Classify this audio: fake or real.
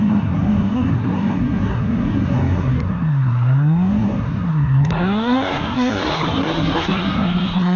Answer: fake